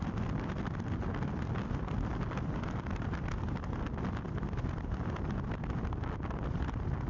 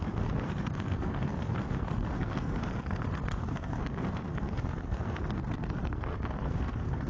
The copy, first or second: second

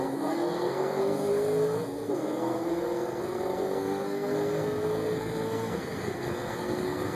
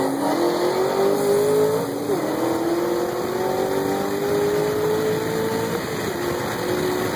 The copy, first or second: first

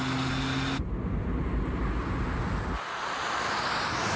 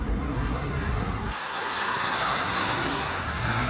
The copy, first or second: second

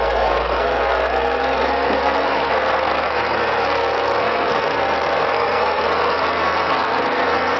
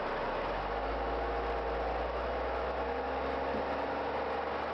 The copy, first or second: first